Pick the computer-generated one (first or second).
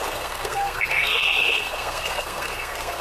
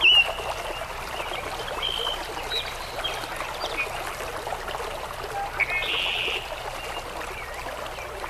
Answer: first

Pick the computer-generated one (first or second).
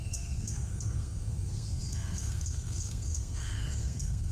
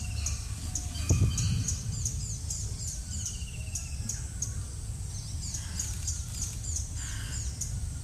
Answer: first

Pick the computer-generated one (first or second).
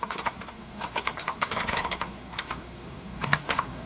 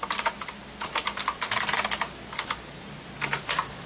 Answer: first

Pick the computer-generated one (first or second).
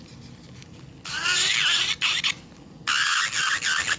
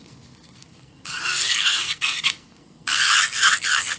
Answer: second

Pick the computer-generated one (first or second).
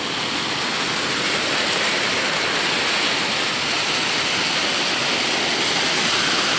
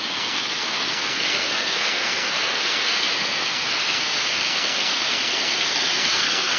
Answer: second